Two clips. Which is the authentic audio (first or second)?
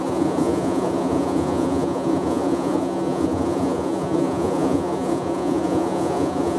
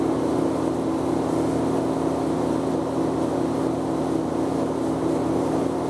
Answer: second